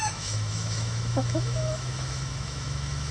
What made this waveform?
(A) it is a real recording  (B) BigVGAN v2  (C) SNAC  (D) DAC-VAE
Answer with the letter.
D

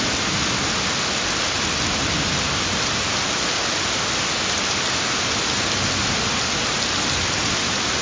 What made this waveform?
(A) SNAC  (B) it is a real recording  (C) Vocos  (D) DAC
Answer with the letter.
B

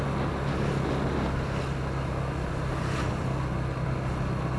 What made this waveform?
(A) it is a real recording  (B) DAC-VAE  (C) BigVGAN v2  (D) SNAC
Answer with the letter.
A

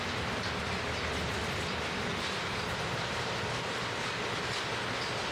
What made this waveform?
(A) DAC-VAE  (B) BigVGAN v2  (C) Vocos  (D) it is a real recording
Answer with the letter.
D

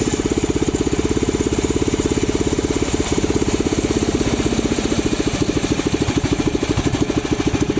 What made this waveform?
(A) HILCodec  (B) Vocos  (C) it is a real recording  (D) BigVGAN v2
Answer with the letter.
D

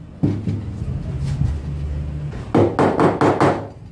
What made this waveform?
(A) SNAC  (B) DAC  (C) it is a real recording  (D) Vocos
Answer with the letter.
C